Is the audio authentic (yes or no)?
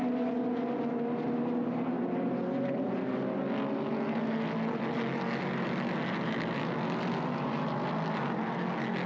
yes